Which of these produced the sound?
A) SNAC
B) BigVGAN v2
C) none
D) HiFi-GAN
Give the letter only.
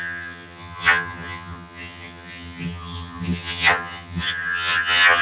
D